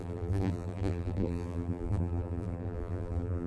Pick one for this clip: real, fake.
fake